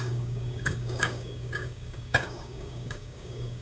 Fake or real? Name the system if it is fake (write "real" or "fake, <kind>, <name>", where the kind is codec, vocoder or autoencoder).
fake, codec, DAC